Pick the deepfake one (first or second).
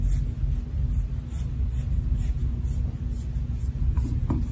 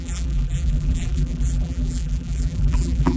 second